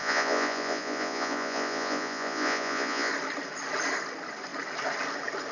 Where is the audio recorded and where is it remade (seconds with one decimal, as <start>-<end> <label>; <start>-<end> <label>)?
0.0-3.1 remade; 3.1-5.5 recorded